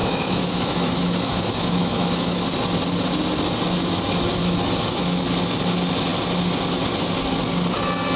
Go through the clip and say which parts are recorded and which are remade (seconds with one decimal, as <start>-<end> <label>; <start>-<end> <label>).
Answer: 0.0-2.4 remade; 2.4-4.4 recorded; 4.4-5.2 remade; 5.2-8.2 recorded